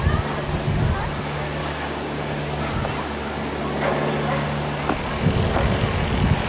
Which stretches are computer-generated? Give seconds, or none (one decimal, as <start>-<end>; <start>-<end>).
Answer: 1.6-2.7

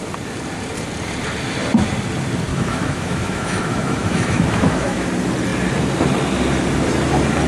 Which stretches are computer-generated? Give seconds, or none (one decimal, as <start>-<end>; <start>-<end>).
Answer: 2.5-5.1

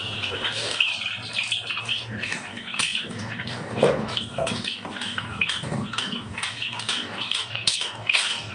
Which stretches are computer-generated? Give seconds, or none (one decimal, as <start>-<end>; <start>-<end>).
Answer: 0.0-0.9; 1.8-8.5

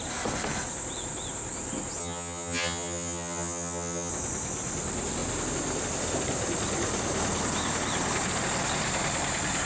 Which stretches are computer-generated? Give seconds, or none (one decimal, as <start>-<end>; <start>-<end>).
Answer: 2.0-4.1

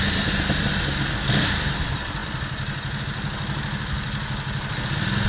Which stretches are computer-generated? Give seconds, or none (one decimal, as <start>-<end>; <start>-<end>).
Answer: none

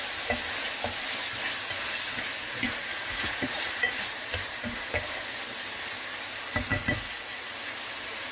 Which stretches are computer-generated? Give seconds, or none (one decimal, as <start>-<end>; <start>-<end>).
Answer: 2.9-3.9; 6.7-7.5

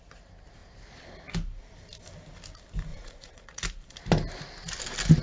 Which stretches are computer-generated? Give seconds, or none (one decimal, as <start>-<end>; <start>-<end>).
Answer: 2.9-3.6

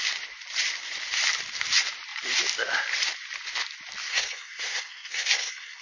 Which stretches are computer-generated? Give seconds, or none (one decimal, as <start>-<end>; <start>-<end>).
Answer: 4.1-5.8